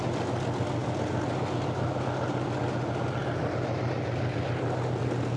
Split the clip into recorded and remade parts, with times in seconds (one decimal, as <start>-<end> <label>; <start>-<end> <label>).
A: 0.0-5.4 recorded